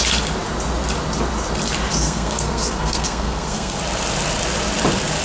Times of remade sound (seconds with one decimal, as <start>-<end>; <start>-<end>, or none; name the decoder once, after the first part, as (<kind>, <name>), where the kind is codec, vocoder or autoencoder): 1.9-3.8 (codec, SNAC)